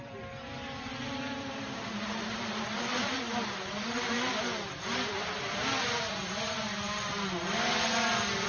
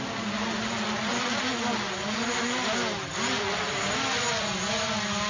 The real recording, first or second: second